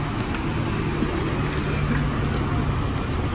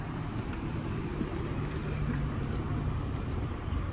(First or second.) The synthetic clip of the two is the second